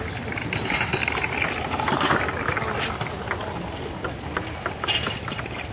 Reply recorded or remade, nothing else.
recorded